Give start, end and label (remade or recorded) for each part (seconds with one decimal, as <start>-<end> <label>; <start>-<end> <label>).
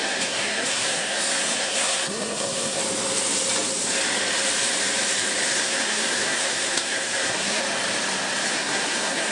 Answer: 0.0-2.8 remade; 2.8-5.5 recorded; 5.5-7.6 remade; 7.6-8.5 recorded; 8.5-9.3 remade